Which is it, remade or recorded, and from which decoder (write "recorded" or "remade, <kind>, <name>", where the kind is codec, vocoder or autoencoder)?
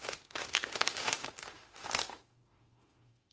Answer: remade, autoencoder, DAC-VAE